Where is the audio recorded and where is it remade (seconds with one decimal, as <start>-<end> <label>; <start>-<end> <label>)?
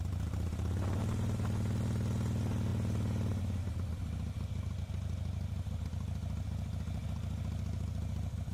0.0-8.5 recorded